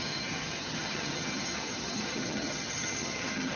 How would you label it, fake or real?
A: fake